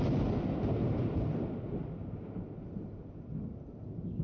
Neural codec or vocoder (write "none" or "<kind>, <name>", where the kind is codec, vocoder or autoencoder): none